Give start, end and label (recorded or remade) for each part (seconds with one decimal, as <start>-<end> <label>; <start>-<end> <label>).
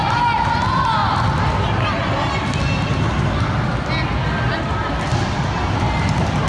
0.0-6.5 recorded